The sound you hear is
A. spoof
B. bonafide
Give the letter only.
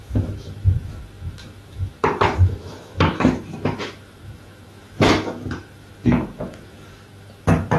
A